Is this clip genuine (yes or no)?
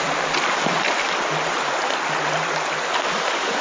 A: yes